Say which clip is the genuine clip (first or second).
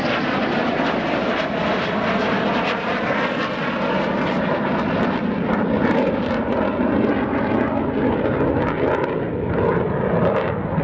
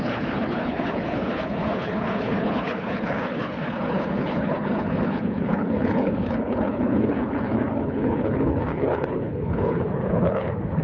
first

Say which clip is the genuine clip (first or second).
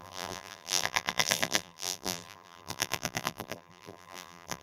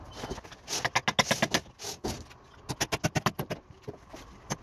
second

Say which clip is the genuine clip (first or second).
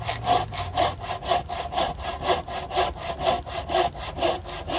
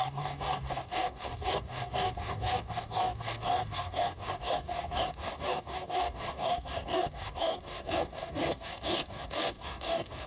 first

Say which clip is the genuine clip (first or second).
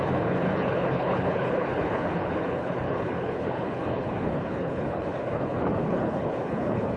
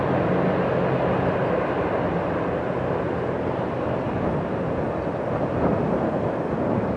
second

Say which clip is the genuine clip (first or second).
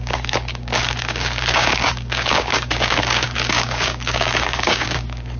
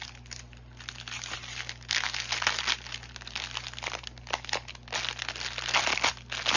second